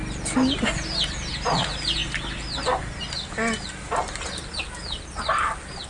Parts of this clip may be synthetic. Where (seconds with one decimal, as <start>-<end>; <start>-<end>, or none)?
none